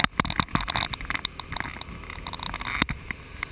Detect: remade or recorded recorded